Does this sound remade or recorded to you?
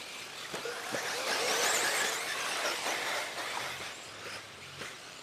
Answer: recorded